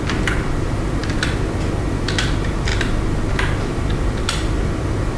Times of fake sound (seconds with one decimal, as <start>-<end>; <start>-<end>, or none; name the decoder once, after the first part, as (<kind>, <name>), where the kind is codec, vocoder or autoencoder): none